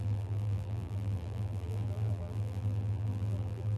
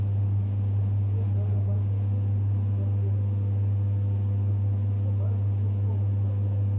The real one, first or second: second